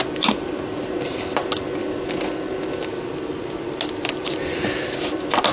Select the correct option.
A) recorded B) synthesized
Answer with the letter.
A